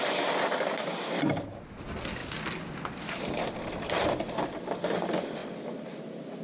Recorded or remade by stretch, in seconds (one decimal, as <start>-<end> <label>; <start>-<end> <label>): 0.0-6.4 recorded